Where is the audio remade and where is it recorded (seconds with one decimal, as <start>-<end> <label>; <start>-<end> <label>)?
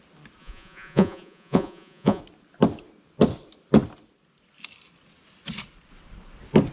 0.0-0.4 recorded; 0.4-2.2 remade; 2.2-6.7 recorded